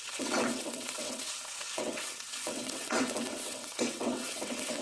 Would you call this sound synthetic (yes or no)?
yes